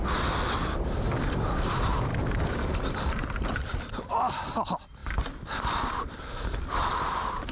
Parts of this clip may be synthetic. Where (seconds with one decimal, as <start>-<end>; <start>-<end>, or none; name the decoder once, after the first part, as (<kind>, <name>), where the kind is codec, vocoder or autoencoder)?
0.6-1.4 (vocoder, BigVGAN v2); 2.1-4.1; 5.0-6.2